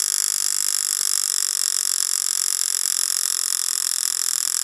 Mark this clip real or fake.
real